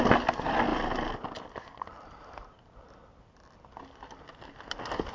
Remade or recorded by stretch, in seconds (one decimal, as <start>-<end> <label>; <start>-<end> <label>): 0.0-5.1 recorded